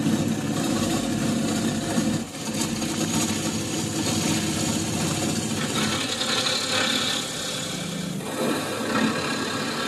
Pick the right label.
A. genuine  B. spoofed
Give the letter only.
A